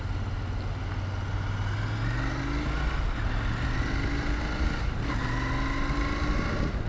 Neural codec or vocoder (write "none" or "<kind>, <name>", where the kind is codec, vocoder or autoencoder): none